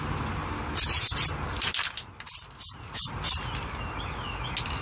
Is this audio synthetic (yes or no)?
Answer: yes